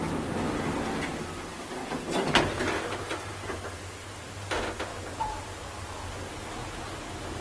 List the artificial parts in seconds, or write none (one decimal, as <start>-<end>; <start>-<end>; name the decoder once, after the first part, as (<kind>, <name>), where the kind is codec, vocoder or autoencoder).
none